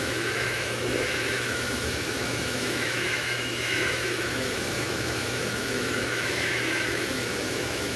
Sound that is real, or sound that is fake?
fake